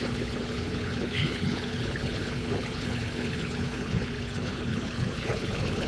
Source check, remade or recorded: remade